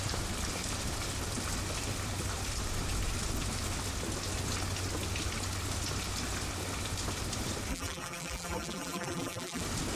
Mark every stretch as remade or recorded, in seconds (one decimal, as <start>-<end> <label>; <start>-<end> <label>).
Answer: 0.0-7.7 recorded; 7.7-9.6 remade; 9.6-10.0 recorded